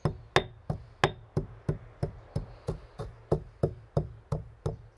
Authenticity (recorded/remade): recorded